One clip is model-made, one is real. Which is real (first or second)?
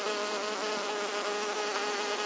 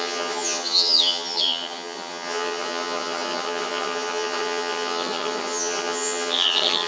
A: first